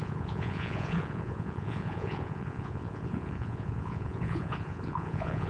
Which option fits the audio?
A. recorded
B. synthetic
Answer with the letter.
B